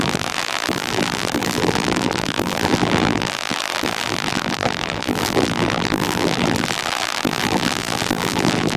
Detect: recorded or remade remade